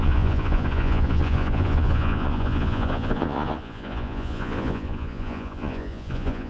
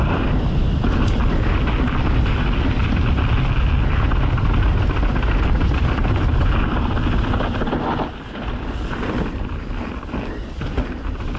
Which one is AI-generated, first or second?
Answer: first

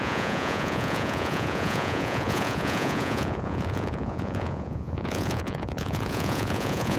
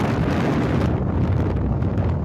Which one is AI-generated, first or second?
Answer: first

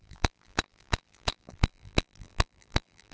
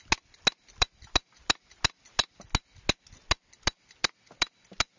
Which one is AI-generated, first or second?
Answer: first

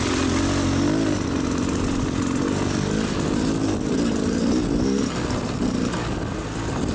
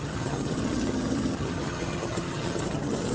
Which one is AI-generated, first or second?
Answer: second